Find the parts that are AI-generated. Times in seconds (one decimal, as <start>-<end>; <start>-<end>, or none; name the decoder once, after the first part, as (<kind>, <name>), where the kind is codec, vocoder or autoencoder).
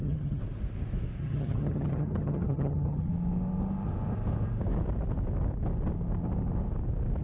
0.0-0.4 (vocoder, HiFi-GAN); 1.2-3.1